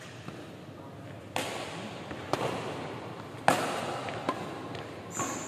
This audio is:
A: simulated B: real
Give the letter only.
B